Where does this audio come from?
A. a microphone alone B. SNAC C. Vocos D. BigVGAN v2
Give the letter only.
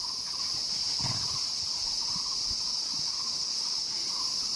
A